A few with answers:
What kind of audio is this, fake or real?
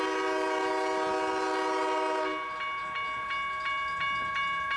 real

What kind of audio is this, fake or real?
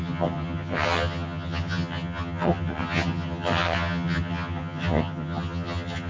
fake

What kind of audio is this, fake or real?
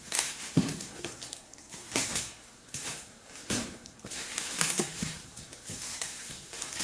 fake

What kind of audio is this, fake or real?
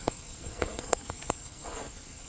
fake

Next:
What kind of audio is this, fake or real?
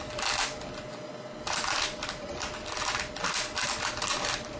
real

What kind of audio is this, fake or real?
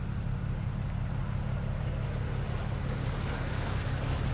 real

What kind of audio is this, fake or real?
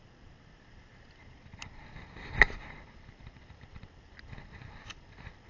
real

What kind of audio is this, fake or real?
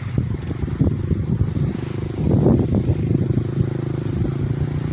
real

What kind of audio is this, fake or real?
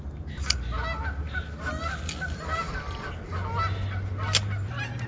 real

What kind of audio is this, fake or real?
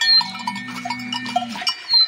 real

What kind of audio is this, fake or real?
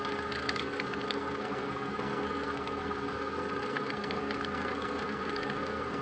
fake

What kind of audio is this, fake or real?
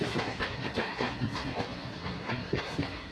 fake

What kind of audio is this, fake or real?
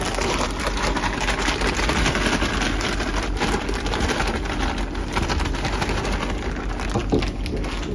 real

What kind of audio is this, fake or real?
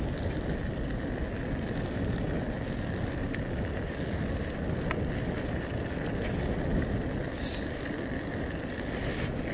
real